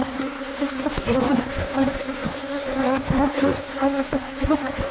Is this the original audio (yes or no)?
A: no